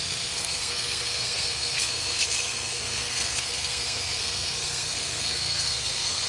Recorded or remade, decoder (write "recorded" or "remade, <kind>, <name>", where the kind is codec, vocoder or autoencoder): remade, codec, SNAC